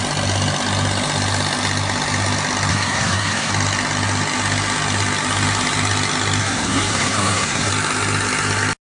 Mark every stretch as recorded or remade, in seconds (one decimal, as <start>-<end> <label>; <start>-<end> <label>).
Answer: 0.0-2.7 recorded; 2.7-3.5 remade; 3.5-6.4 recorded; 6.4-7.7 remade; 7.7-8.8 recorded